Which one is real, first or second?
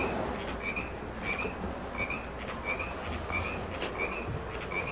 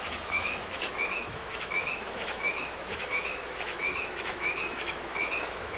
first